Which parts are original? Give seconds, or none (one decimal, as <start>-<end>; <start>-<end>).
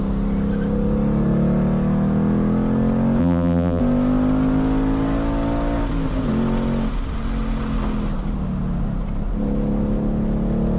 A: 0.0-3.2; 3.8-10.8